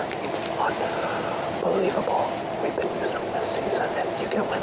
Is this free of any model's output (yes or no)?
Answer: yes